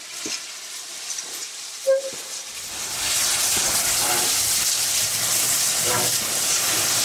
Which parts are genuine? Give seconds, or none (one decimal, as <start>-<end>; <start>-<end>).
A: 0.0-0.9; 2.2-3.6